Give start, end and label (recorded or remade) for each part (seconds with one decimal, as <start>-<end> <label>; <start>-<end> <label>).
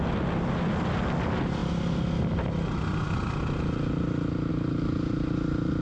0.0-5.8 recorded